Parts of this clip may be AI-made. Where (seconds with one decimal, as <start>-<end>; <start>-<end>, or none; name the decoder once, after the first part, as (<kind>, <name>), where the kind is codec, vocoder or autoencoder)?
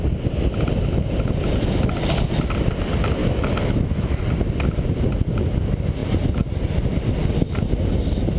3.2-4.2 (autoencoder, DAC-VAE)